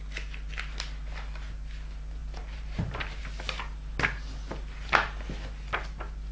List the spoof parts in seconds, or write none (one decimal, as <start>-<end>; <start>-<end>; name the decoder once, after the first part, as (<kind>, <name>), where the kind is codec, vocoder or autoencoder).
2.2-3.2 (vocoder, BigVGAN v2)